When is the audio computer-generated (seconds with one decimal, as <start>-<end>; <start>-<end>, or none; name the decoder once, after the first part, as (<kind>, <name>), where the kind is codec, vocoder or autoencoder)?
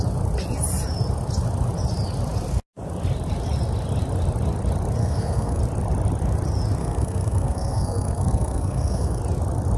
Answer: 5.0-5.6 (codec, SNAC); 6.8-9.2